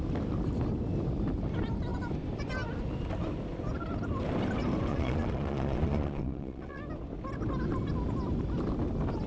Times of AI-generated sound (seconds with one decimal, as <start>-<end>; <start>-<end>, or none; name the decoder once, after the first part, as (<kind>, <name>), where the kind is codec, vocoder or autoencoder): 4.9-6.8 (vocoder, Vocos)